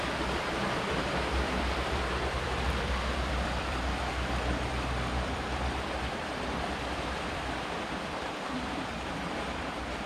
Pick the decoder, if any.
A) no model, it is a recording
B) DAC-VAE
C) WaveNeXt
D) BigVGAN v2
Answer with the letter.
D